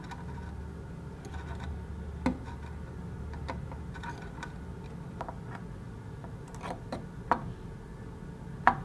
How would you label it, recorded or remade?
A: recorded